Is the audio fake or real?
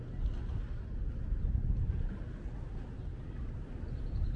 real